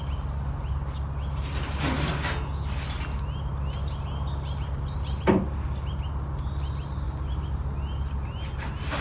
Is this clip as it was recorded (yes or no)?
yes